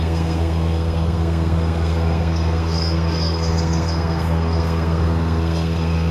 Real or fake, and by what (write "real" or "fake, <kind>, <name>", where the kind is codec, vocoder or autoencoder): fake, codec, SNAC